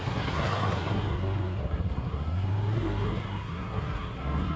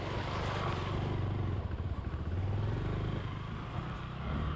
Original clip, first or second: second